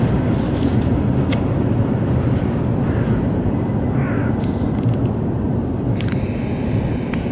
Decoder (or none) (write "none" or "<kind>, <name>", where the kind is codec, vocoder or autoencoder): none